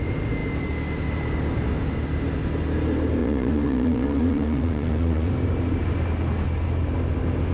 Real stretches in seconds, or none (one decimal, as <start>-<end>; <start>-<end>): 0.0-3.2; 5.3-7.5